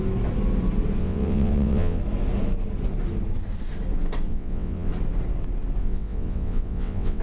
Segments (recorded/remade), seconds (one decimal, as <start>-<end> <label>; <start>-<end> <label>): 0.0-1.0 recorded; 1.0-2.0 remade; 2.0-4.3 recorded; 4.3-4.9 remade; 4.9-5.8 recorded; 5.8-7.2 remade